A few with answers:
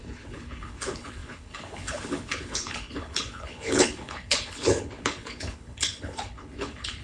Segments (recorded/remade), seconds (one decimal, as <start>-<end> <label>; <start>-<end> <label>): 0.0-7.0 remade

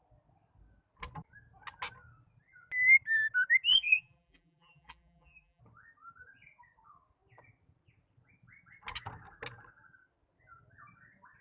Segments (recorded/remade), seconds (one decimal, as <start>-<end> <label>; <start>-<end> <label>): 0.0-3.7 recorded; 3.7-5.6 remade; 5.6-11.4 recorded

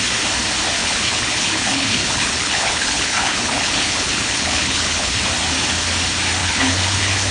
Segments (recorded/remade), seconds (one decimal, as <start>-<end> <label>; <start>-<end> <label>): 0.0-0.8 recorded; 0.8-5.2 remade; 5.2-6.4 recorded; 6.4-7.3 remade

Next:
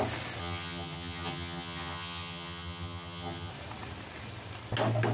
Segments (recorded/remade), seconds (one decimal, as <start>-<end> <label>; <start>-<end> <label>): 0.0-0.4 recorded; 0.4-3.5 remade; 3.5-5.1 recorded

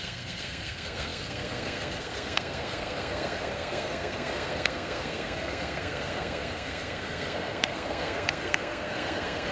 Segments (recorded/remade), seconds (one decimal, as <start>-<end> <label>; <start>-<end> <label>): 0.0-9.5 remade

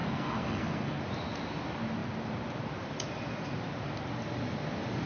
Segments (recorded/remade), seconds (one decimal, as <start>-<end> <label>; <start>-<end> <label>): 0.0-1.0 remade; 1.0-5.1 recorded